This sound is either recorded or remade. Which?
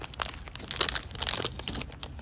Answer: recorded